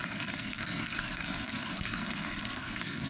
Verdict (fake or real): fake